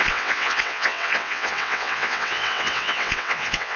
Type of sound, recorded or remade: remade